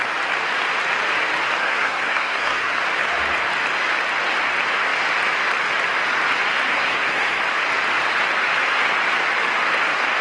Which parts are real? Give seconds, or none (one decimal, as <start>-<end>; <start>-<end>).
0.0-1.6; 2.8-6.7; 7.4-10.2